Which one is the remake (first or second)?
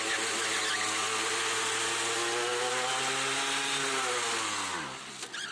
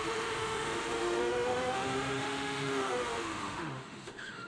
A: second